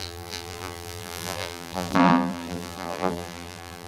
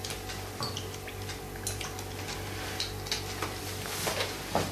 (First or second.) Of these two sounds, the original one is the second